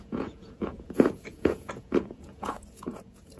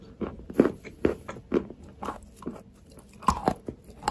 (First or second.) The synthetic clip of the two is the first